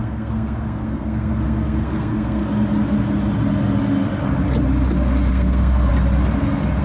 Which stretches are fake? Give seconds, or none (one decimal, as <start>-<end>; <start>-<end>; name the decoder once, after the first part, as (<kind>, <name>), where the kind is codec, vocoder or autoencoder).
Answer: 0.0-2.4 (codec, SNAC); 5.3-5.9